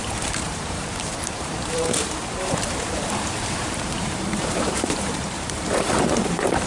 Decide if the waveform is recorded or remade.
remade